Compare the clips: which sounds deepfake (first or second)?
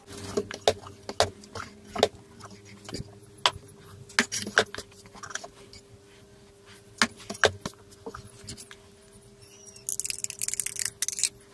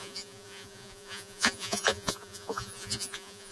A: second